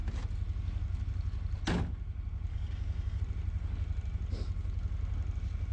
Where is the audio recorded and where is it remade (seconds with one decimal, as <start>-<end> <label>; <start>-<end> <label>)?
0.0-2.5 recorded; 2.5-3.2 remade; 3.2-5.7 recorded